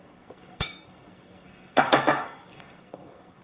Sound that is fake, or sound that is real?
fake